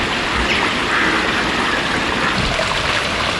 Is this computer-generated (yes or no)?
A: no